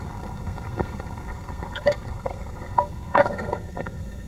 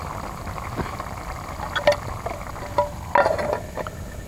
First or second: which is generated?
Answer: first